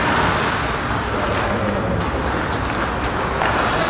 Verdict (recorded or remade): recorded